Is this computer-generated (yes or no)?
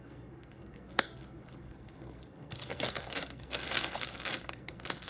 yes